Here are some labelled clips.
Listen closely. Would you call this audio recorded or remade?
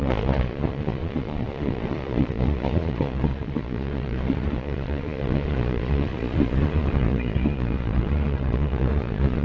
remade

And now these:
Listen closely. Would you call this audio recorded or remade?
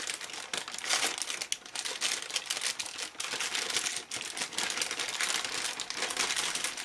recorded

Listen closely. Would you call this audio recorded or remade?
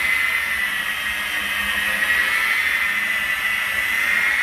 recorded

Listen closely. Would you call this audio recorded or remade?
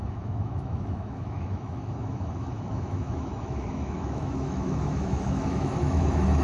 remade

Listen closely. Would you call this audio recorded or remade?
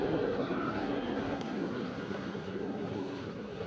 remade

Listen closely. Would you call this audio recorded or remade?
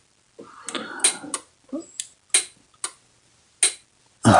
recorded